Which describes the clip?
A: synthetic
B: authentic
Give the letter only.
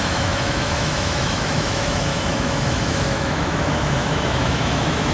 A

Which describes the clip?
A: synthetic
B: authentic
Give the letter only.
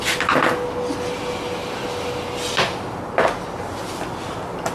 B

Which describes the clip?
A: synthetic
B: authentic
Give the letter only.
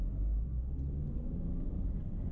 B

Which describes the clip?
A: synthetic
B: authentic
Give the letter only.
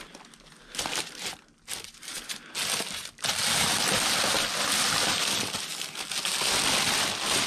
B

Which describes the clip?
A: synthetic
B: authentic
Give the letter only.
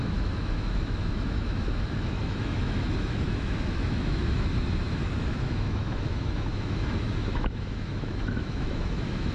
A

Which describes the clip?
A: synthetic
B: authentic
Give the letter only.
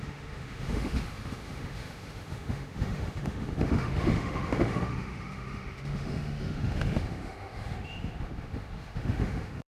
A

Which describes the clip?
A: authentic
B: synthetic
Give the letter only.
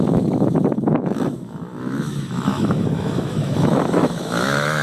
B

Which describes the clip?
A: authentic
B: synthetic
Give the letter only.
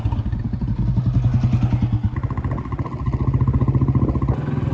A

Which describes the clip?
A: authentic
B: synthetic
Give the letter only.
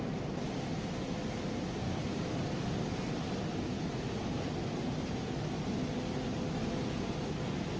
A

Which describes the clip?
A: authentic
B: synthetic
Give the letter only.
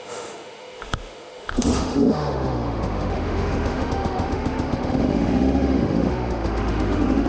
B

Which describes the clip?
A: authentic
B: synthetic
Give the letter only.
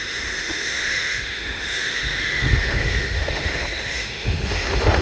B